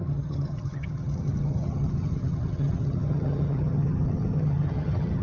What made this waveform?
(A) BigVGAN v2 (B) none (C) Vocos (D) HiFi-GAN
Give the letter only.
D